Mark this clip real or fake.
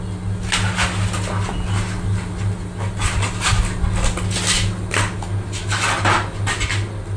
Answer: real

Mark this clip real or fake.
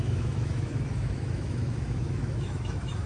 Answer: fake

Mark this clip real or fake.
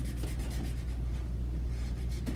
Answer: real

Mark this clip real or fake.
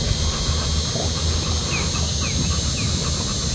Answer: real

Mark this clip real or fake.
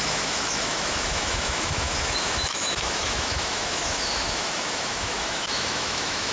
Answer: fake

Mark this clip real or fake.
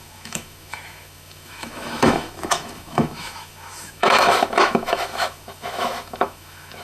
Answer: fake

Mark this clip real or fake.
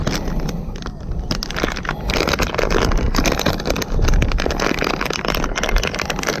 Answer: real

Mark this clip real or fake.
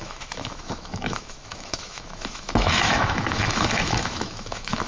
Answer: fake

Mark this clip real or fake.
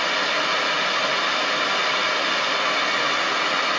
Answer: real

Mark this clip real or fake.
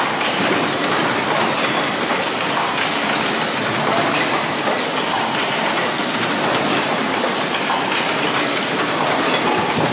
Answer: real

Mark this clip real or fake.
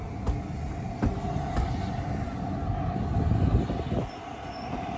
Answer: real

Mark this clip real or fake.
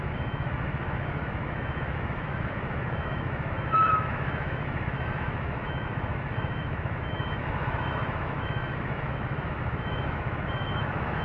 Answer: fake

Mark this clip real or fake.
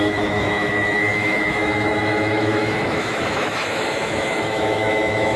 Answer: fake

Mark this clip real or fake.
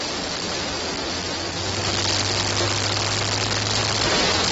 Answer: real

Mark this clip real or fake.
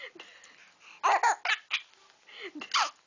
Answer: real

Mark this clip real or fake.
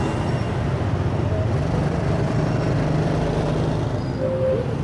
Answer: real